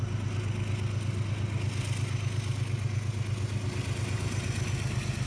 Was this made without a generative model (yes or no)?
yes